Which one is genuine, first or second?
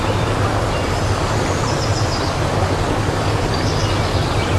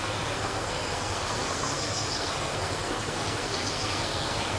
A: first